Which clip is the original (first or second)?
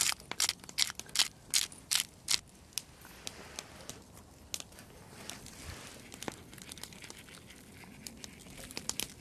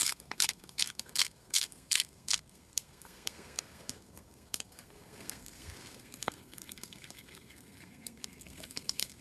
first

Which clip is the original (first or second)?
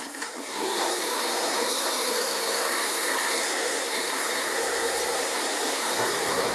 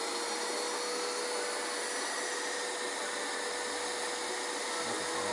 second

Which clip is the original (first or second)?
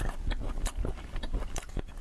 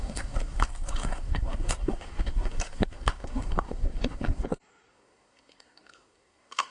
first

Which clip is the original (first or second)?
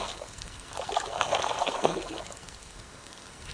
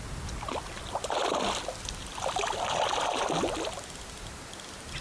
second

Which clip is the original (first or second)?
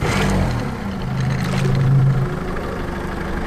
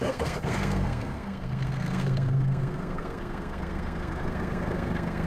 first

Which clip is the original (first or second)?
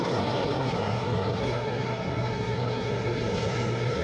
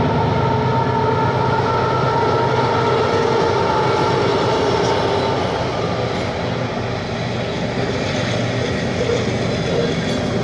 second